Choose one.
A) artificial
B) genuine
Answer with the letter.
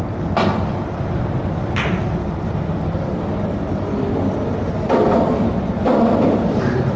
B